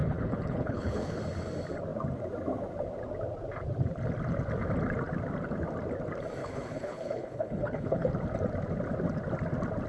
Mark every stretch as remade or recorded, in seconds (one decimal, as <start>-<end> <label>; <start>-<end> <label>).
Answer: 0.0-1.2 remade; 1.2-6.4 recorded; 6.4-8.1 remade; 8.1-9.9 recorded